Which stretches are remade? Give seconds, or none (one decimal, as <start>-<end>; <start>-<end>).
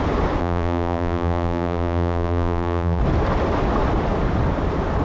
0.4-3.0